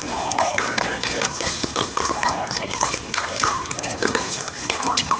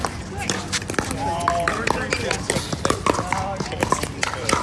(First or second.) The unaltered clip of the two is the second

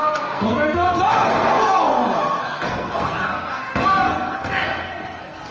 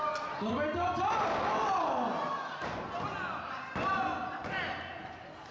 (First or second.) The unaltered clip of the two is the second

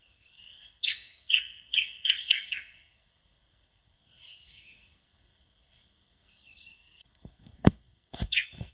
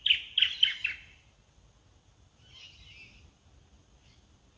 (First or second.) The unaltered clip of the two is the second